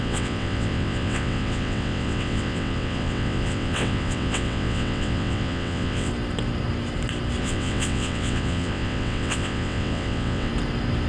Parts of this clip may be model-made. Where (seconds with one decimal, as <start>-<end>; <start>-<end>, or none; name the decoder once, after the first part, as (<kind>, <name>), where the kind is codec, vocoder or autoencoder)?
0.0-6.1 (vocoder, WaveNeXt); 7.4-10.5